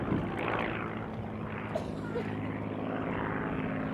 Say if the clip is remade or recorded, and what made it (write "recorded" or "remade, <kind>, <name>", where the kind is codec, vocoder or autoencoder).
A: recorded